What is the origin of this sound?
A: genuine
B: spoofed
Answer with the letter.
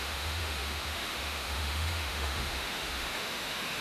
B